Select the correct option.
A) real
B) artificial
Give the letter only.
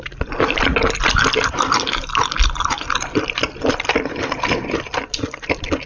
A